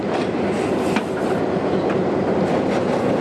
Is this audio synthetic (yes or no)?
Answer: no